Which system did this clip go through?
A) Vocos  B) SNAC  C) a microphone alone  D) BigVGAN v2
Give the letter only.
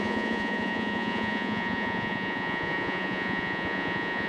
A